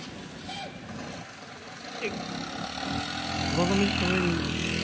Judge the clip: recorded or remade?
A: recorded